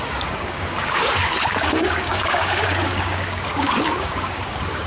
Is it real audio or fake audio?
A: fake